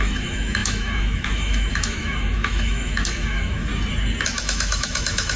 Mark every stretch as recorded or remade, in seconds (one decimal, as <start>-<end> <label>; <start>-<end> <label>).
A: 0.0-3.7 remade; 3.7-4.4 recorded; 4.4-5.4 remade